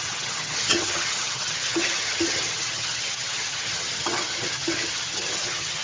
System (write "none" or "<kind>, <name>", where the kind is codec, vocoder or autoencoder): vocoder, HiFi-GAN